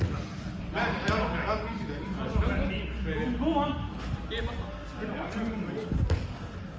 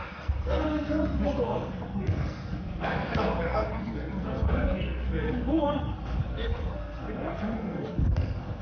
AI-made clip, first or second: second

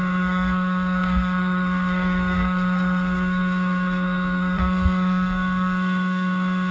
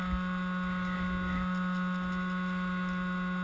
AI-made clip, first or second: first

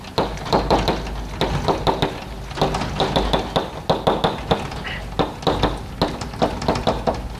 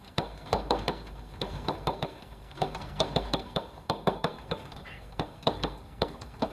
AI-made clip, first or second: second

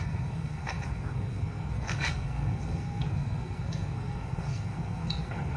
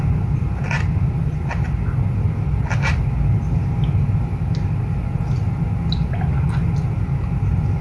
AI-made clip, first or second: first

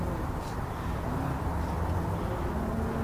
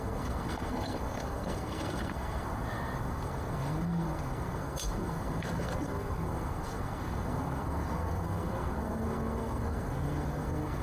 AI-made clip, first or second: second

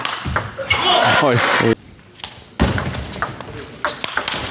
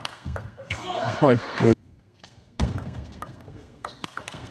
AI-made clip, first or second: second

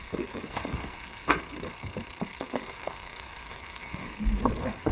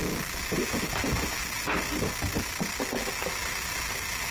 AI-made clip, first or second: first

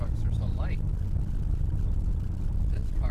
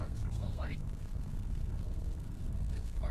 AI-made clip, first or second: second